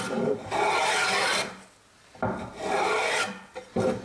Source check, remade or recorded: recorded